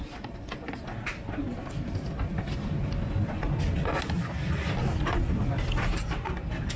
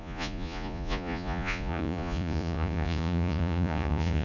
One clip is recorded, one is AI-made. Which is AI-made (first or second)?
second